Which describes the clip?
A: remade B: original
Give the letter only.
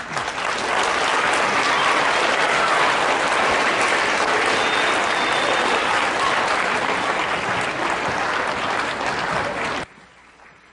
B